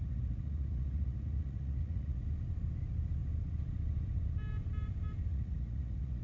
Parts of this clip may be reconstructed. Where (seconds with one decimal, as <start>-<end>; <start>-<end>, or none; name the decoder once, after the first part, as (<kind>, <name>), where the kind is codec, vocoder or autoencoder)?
0.0-2.2 (vocoder, Vocos); 5.3-6.2